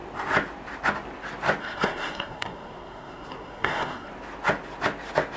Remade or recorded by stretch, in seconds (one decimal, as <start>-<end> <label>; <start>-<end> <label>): 0.0-1.6 recorded; 1.6-4.1 remade; 4.1-5.4 recorded